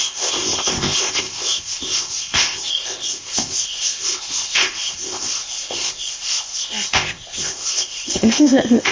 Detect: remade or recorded remade